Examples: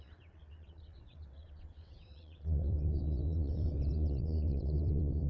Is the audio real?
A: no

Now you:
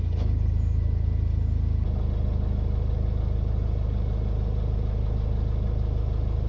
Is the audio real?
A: yes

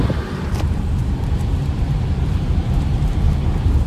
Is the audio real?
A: no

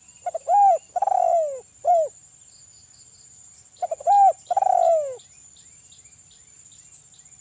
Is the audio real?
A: yes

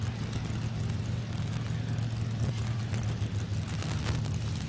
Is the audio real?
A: yes